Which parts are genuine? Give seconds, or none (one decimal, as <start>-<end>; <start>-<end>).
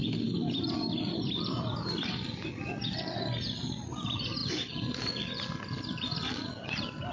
2.0-4.4; 5.3-7.1